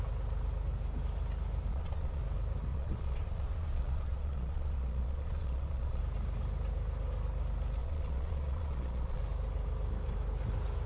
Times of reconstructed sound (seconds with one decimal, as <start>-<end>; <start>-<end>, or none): 1.7-2.2; 2.7-6.0; 7.8-9.2